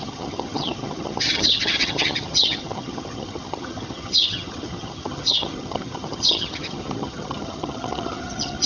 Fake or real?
fake